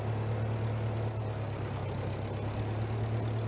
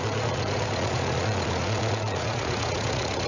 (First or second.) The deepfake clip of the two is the second